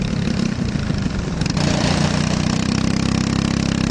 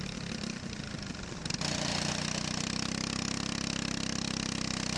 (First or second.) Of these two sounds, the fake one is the first